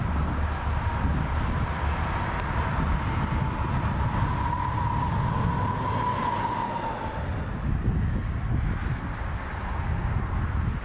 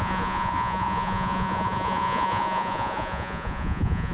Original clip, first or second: first